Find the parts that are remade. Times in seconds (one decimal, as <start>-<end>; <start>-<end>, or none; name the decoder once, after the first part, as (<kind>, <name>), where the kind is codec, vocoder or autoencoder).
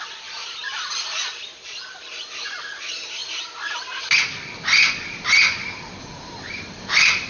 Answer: 0.0-3.2 (vocoder, BigVGAN v2); 6.0-7.3